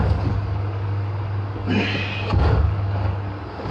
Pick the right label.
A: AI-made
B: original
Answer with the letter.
A